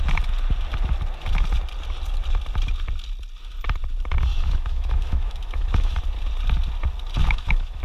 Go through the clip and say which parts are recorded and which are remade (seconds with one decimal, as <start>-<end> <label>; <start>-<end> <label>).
0.0-4.3 recorded; 4.3-6.0 remade; 6.0-7.2 recorded; 7.2-7.8 remade